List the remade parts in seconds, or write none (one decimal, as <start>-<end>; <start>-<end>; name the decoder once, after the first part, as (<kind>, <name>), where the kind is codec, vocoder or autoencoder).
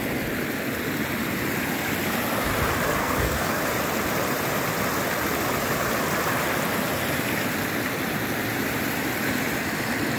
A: 3.0-3.6 (codec, SNAC)